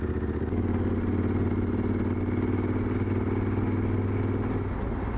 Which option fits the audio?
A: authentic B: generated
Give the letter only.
A